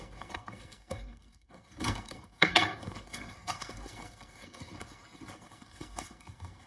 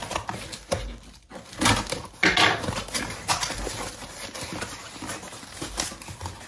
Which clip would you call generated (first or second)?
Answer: first